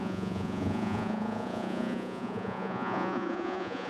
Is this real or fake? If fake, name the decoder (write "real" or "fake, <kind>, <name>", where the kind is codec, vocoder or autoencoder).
fake, vocoder, Vocos